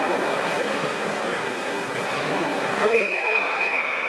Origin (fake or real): fake